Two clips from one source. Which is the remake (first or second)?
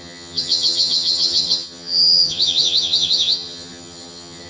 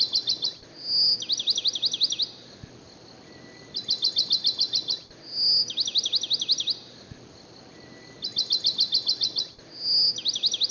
first